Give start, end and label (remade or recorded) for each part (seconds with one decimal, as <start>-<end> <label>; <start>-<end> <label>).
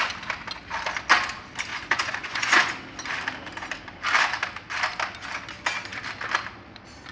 0.0-1.7 recorded; 1.7-2.7 remade; 2.7-7.1 recorded